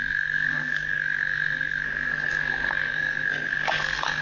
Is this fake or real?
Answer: fake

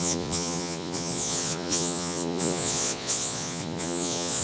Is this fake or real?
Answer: fake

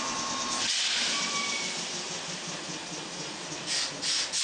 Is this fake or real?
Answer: real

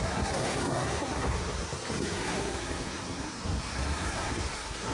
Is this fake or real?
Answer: fake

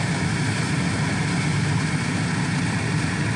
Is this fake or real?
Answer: real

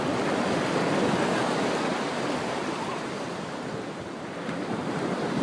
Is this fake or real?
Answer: real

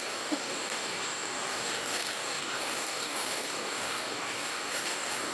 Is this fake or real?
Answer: fake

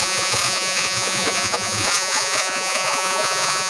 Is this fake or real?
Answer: fake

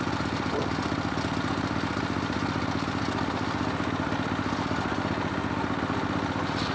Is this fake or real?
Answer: real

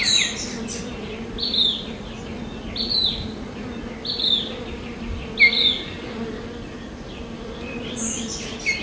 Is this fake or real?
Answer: real